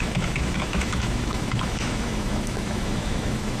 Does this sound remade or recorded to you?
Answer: remade